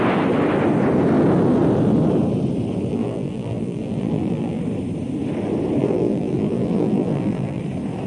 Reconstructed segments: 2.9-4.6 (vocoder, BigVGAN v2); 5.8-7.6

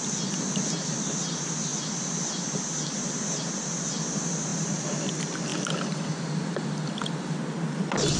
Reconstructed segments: 1.7-3.4 (vocoder, BigVGAN v2); 4.5-5.1; 5.5-7.3

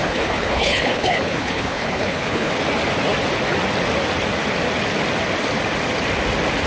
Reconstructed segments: 0.0-2.5 (codec, HILCodec)